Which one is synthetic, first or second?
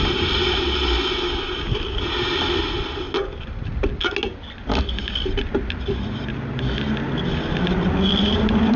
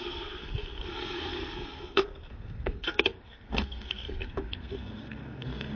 second